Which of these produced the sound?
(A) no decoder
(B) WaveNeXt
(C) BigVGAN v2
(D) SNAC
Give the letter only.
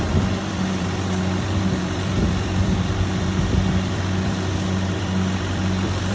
C